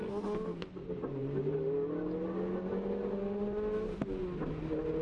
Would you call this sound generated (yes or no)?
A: no